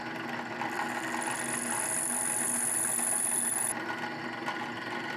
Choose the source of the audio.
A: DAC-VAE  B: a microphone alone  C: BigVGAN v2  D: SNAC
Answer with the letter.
B